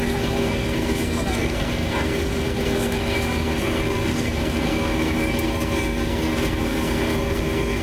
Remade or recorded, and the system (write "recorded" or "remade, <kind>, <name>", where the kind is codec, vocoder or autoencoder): remade, codec, SNAC